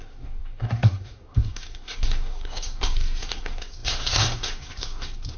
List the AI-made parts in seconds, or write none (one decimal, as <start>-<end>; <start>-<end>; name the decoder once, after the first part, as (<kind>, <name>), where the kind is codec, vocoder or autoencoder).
0.0-5.4 (codec, SNAC)